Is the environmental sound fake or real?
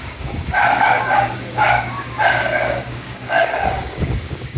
fake